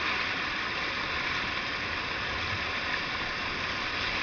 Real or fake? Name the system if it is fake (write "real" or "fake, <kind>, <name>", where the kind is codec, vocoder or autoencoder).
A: real